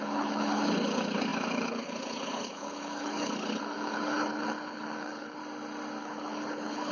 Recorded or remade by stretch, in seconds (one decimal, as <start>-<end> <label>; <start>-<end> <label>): 0.0-5.4 remade; 5.4-6.0 recorded; 6.0-6.9 remade